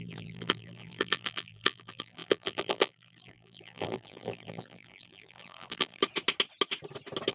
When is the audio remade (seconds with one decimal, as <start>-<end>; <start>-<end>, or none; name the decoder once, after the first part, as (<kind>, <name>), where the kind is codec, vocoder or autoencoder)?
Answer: 0.0-6.0 (vocoder, BigVGAN v2)